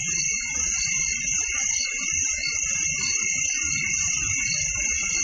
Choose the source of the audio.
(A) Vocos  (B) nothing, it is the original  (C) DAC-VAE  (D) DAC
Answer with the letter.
B